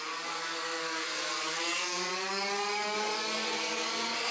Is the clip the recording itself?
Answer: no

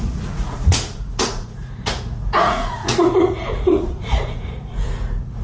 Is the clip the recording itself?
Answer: no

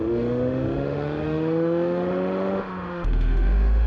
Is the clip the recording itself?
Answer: no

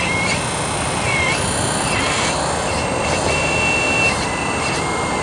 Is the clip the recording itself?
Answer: yes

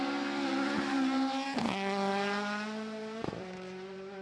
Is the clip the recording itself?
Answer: yes